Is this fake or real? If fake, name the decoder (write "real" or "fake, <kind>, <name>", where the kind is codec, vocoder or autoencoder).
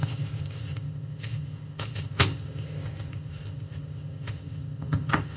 fake, codec, ZipCodec